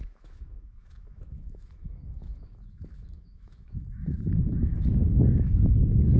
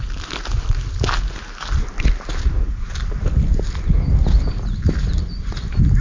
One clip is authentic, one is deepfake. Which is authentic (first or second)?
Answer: second